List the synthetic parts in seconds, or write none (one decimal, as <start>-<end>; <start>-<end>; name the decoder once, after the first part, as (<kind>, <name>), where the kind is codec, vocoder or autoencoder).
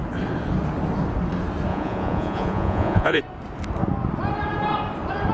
1.7-3.2 (vocoder, Vocos)